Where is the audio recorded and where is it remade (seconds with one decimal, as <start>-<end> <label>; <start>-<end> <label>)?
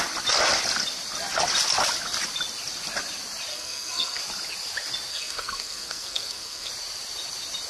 0.0-3.5 recorded; 3.5-4.2 remade; 4.2-5.1 recorded; 5.1-6.7 remade; 6.7-7.7 recorded